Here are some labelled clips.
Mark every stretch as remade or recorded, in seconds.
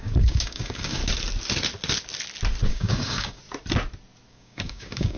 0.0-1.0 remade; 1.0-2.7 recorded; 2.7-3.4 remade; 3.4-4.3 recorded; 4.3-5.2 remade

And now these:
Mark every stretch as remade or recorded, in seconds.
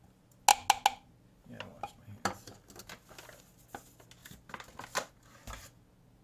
0.0-6.2 recorded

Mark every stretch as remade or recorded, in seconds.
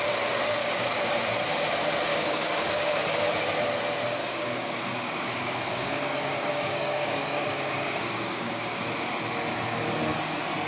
0.0-0.6 recorded; 0.6-1.1 remade; 1.1-2.1 recorded; 2.1-2.9 remade; 2.9-4.2 recorded; 4.2-8.8 remade; 8.8-10.7 recorded